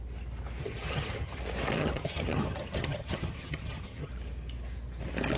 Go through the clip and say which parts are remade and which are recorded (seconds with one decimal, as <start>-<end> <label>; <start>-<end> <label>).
0.0-0.6 recorded; 0.6-1.4 remade; 1.4-1.8 recorded; 1.8-4.1 remade; 4.1-5.4 recorded